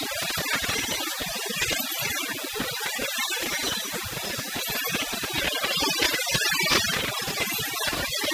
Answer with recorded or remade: recorded